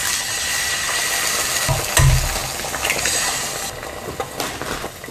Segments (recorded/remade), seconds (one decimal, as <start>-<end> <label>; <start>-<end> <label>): 0.0-5.1 recorded